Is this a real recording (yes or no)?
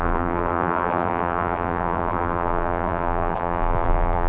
no